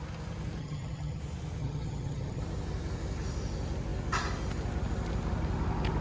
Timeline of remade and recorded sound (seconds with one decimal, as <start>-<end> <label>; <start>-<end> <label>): 0.0-0.6 recorded; 0.6-1.2 remade; 1.2-1.6 recorded; 1.6-2.4 remade; 2.4-6.0 recorded